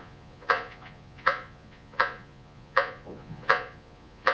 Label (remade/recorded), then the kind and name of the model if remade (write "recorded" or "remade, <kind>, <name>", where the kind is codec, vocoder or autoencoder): remade, vocoder, Vocos